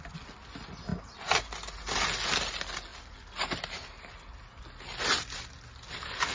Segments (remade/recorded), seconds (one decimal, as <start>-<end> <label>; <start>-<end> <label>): 0.0-6.3 recorded